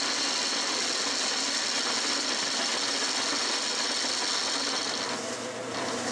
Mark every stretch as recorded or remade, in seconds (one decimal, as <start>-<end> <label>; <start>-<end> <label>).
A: 0.0-6.1 recorded